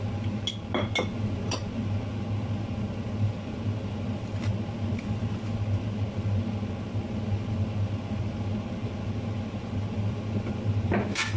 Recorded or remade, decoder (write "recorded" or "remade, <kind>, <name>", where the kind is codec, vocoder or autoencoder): recorded